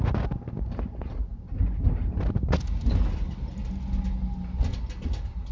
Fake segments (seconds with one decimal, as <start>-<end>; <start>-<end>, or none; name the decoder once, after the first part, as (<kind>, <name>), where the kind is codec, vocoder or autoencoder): none

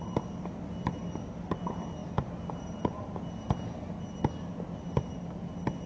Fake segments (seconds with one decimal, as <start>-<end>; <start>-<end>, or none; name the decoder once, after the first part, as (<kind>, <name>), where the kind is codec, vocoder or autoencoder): none

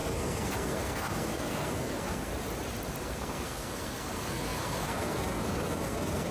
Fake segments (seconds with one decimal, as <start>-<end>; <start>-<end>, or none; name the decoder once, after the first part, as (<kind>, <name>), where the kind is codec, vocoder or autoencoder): 0.0-2.3 (codec, SNAC); 3.0-6.3

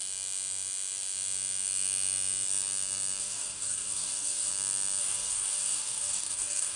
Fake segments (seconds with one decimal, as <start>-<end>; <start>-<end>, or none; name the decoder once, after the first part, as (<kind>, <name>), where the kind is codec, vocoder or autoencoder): 3.2-4.5 (codec, DAC); 5.0-6.8

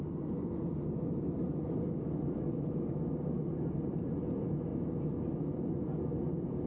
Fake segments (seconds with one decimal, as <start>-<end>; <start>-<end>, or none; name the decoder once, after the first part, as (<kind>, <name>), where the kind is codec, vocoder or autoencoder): none